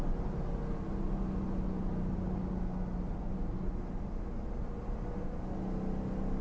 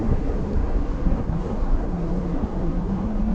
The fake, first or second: second